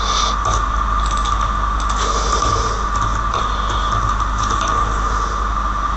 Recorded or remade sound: recorded